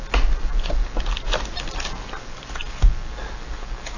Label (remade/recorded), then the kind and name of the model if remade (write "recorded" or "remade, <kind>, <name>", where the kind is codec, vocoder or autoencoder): recorded